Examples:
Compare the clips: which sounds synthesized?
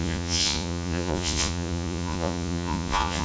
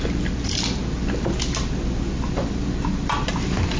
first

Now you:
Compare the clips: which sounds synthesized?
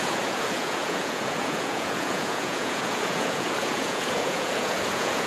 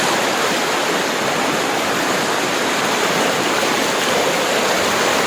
first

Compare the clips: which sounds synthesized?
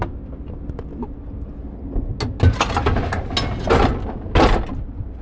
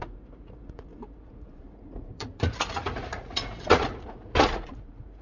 second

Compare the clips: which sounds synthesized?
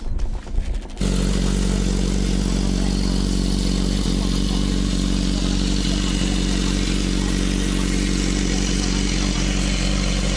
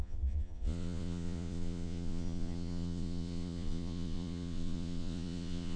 second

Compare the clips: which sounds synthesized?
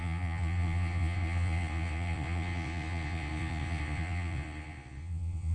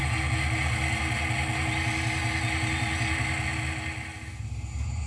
first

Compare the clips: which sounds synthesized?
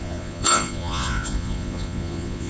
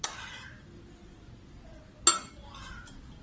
first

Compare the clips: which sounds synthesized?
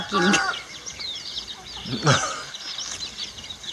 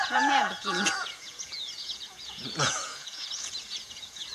second